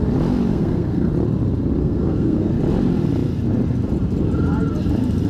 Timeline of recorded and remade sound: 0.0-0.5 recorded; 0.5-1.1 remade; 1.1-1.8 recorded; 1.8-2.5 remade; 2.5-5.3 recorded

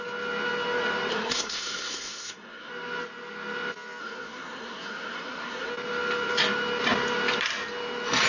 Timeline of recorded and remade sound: 0.0-1.1 recorded; 1.1-2.7 remade; 2.7-4.0 recorded; 4.0-5.7 remade; 5.7-8.3 recorded

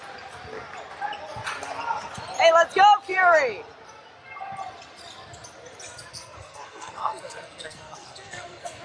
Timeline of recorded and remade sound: 0.0-6.1 recorded; 6.1-8.8 remade

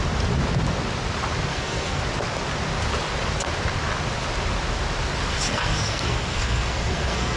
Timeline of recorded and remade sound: 0.0-1.5 recorded; 1.5-2.0 remade; 2.0-5.3 recorded; 5.3-7.4 remade

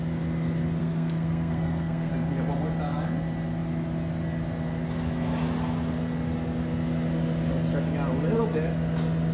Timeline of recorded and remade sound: 0.0-0.8 recorded; 0.8-2.1 remade; 2.1-9.3 recorded

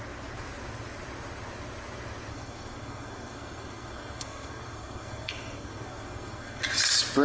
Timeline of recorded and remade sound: 0.0-2.3 recorded; 2.3-6.6 remade; 6.6-7.2 recorded

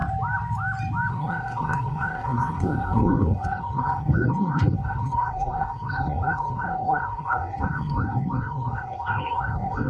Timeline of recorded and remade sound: 0.0-1.1 recorded; 1.1-9.9 remade